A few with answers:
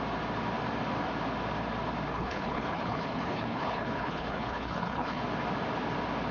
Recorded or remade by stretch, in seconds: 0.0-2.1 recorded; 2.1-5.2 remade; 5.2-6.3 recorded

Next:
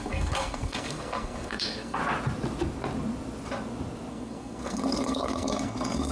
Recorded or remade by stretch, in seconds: 0.0-2.0 remade; 2.0-4.1 recorded; 4.1-6.1 remade